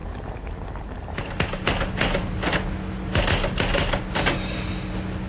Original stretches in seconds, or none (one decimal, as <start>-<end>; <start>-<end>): 0.0-5.3